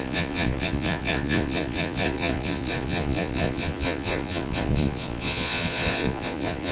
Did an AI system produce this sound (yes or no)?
yes